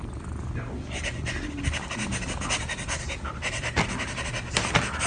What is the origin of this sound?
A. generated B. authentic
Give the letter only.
B